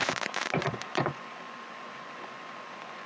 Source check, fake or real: fake